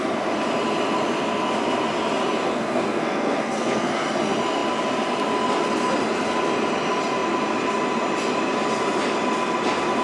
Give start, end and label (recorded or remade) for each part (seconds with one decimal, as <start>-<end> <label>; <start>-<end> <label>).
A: 0.0-2.5 recorded; 2.5-3.9 remade; 3.9-10.0 recorded

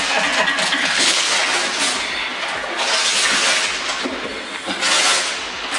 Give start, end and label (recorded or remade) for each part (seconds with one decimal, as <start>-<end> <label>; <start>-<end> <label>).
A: 0.0-0.8 recorded; 0.8-1.3 remade; 1.3-5.8 recorded

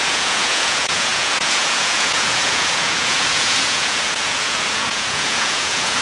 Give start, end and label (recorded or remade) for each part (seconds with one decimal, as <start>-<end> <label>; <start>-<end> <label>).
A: 0.0-6.0 remade

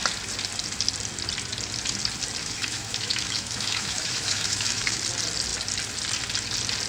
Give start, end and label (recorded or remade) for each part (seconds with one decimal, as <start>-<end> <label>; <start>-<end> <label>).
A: 0.0-2.4 recorded; 2.4-5.0 remade; 5.0-6.9 recorded

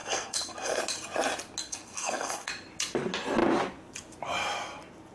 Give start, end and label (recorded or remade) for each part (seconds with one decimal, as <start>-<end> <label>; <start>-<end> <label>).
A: 0.0-0.8 remade; 0.8-1.6 recorded; 1.6-2.5 remade; 2.5-5.1 recorded

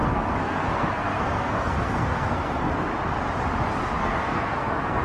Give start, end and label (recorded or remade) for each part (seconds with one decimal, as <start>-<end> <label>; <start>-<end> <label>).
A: 0.0-2.7 remade; 2.7-4.0 recorded; 4.0-5.0 remade